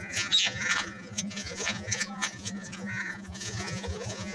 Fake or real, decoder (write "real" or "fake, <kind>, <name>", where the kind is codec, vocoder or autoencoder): fake, vocoder, Vocos